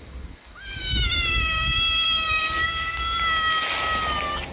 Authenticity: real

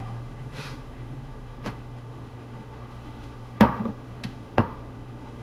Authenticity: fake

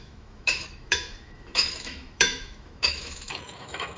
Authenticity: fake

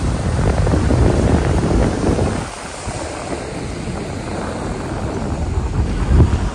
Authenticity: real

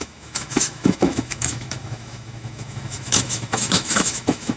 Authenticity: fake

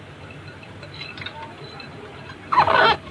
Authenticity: real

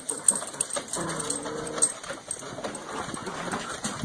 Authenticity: real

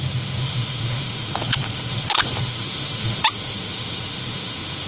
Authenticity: fake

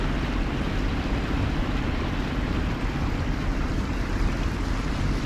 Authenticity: real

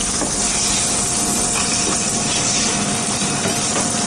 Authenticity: real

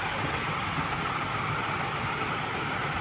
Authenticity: real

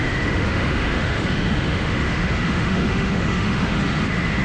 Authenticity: fake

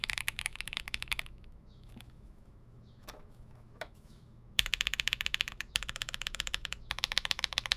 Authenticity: fake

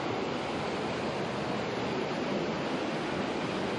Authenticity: real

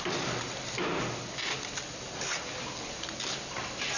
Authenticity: real